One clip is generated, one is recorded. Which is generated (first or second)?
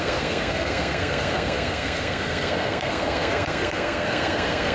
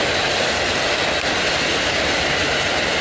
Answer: first